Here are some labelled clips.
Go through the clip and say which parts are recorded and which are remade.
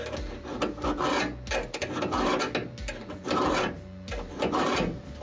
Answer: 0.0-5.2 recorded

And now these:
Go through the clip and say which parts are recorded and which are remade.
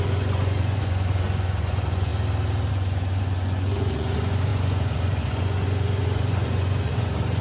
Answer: 0.0-2.1 remade; 2.1-2.7 recorded; 2.7-7.4 remade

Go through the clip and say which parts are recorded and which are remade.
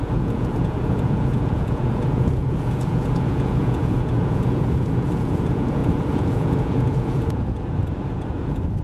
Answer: 0.0-8.8 remade